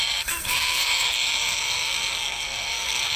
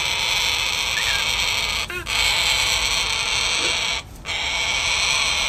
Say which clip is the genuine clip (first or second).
second